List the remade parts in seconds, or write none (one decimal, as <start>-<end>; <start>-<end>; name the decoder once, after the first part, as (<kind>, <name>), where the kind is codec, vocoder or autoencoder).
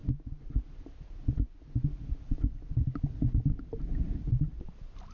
none